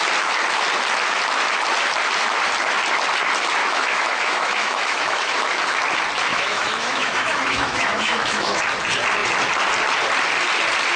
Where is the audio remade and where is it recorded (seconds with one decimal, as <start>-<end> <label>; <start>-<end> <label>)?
0.0-3.6 recorded; 3.6-5.6 remade; 5.6-6.3 recorded; 6.3-8.6 remade; 8.6-11.0 recorded